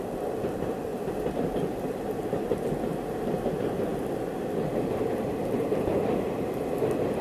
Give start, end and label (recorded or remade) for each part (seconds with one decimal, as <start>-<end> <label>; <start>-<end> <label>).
0.0-7.2 recorded